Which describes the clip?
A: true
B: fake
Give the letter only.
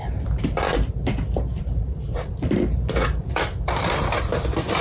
B